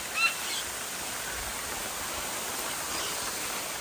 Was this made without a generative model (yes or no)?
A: yes